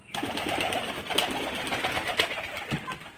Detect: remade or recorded recorded